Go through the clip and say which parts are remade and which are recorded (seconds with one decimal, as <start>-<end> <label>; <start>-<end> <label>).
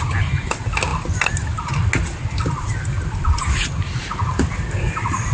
0.0-5.3 recorded